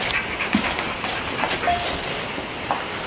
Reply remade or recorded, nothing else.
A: recorded